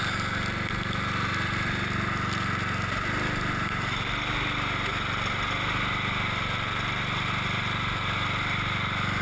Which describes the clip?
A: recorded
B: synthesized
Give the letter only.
A